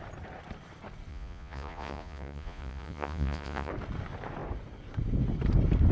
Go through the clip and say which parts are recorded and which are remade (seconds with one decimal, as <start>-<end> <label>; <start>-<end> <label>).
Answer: 0.0-1.1 recorded; 1.1-3.7 remade; 3.7-5.9 recorded